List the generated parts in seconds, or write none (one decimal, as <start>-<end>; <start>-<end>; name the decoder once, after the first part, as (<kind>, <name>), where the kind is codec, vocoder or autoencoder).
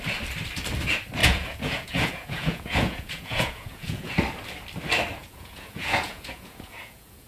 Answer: 1.2-4.1 (vocoder, Vocos); 5.2-7.3